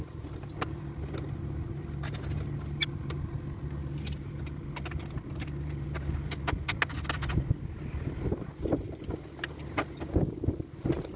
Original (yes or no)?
yes